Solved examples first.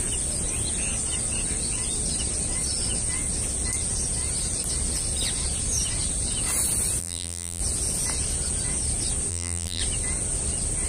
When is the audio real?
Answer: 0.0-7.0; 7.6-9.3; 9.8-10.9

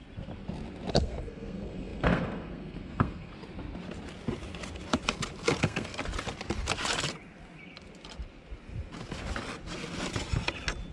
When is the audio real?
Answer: 0.0-0.9; 3.3-5.6; 6.0-10.9

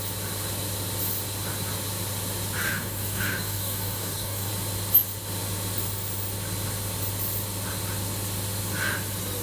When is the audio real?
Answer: 0.0-2.6; 4.5-9.4

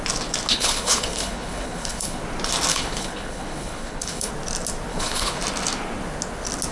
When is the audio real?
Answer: 0.0-0.5; 2.2-2.7; 4.3-4.9; 5.4-6.7